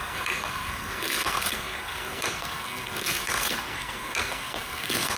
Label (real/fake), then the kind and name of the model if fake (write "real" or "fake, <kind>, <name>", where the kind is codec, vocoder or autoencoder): fake, codec, SNAC